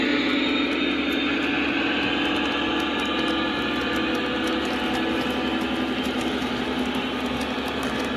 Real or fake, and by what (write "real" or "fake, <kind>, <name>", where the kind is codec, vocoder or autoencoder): real